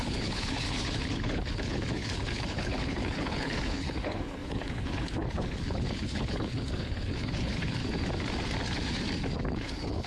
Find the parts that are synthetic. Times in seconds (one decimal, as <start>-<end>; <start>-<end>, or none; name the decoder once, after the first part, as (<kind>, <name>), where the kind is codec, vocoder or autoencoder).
0.0-7.8 (codec, HILCodec); 9.5-10.1